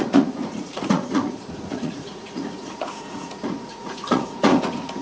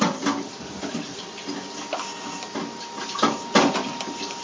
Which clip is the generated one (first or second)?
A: first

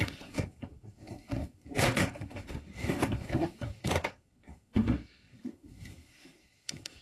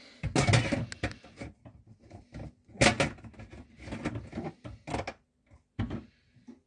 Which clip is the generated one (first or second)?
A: first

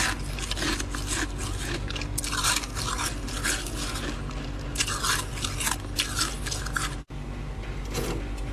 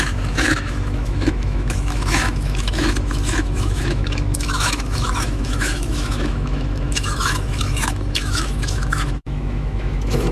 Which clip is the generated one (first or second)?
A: second